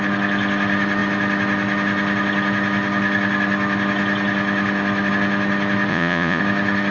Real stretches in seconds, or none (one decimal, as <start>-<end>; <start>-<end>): 0.0-5.9; 6.4-6.9